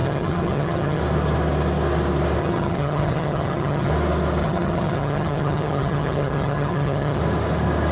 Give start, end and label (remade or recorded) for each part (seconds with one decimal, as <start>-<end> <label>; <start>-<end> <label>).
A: 0.0-1.0 remade; 1.0-2.4 recorded; 2.4-3.9 remade; 3.9-4.4 recorded; 4.4-7.2 remade; 7.2-7.9 recorded